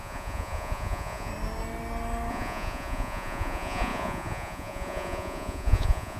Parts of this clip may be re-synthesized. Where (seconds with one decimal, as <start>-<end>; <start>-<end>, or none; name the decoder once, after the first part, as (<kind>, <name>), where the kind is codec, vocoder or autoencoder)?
0.0-1.3 (vocoder, Vocos); 2.3-6.2